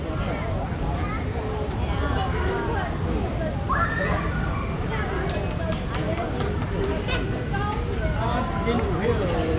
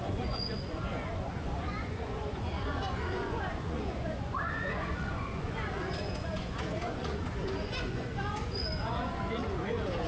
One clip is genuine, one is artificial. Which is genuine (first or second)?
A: first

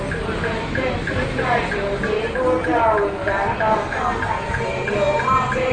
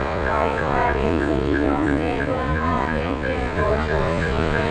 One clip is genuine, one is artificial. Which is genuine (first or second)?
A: first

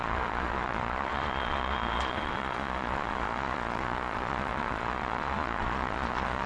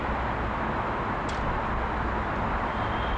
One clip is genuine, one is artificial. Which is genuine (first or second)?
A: second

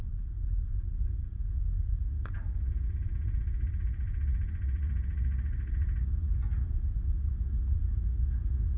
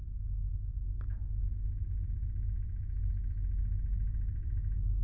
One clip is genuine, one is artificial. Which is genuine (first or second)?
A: second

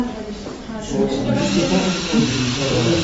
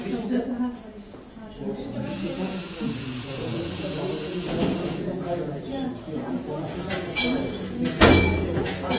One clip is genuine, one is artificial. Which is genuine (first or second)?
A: first